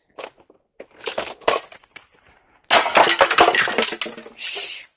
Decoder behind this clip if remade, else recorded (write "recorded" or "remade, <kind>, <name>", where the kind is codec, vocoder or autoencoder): recorded